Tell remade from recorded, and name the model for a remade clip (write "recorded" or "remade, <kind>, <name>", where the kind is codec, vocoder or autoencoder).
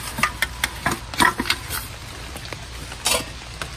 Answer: recorded